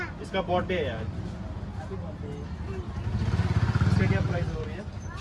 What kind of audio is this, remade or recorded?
recorded